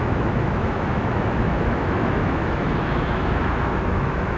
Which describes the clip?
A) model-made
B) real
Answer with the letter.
A